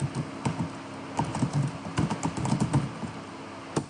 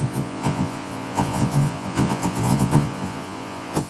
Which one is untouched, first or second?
first